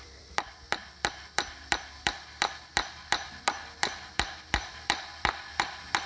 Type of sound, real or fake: fake